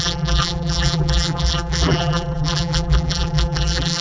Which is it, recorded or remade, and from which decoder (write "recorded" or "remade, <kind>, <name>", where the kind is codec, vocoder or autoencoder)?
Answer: remade, vocoder, BigVGAN v2